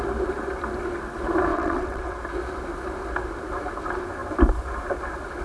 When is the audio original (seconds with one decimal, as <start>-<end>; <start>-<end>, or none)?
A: 0.0-1.5; 2.2-5.4